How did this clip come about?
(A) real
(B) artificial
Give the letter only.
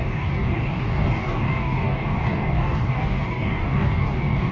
B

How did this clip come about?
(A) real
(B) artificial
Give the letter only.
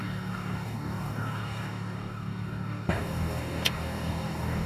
B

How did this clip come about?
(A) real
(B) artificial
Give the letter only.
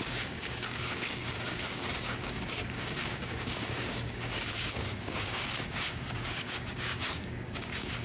B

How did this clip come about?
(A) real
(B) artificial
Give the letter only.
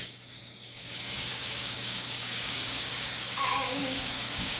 B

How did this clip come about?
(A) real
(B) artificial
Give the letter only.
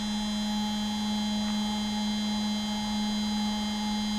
A